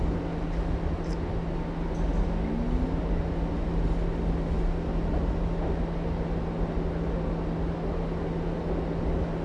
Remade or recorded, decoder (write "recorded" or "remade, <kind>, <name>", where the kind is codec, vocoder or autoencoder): recorded